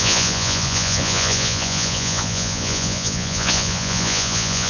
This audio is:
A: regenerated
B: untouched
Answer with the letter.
A